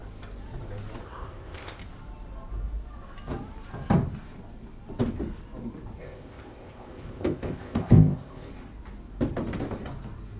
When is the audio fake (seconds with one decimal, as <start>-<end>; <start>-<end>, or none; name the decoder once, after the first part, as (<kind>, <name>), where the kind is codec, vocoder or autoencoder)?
1.0-1.8 (codec, ZipCodec); 6.0-8.5